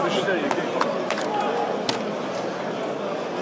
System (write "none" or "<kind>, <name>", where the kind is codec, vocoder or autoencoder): none